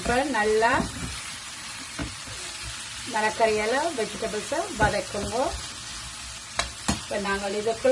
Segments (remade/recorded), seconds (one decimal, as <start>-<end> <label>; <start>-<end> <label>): 0.0-2.0 remade; 2.0-6.7 recorded; 6.7-7.9 remade